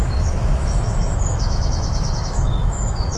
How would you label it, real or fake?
fake